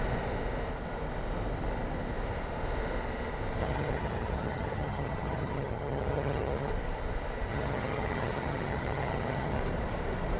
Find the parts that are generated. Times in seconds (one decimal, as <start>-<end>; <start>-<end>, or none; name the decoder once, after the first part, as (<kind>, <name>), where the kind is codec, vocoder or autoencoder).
3.6-6.7 (vocoder, HiFi-GAN); 7.5-9.6